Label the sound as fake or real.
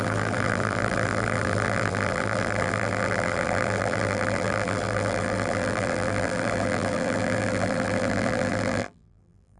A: fake